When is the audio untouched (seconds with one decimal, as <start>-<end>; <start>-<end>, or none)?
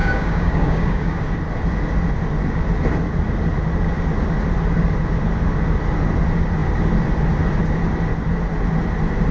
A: 1.2-9.3